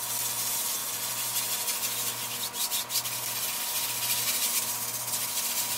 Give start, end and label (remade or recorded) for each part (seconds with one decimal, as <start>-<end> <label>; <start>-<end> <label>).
0.0-5.8 recorded